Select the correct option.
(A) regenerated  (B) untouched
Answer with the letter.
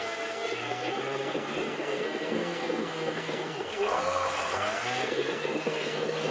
A